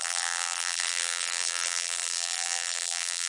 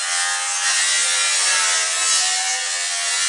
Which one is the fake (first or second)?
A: first